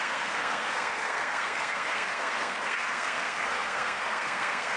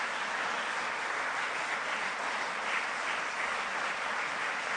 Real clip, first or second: second